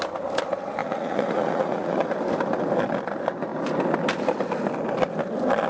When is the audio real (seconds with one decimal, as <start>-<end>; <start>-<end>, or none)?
0.0-0.8; 2.1-5.7